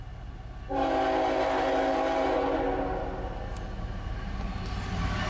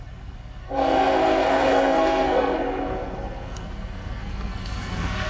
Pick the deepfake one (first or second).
second